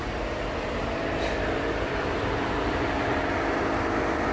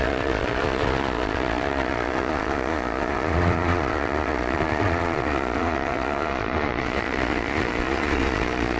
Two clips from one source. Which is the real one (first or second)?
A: first